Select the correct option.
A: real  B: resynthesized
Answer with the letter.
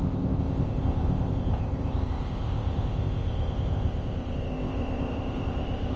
B